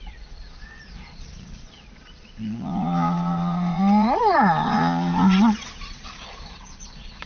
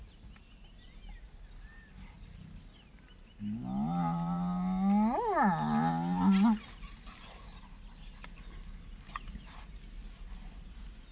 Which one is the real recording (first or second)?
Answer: second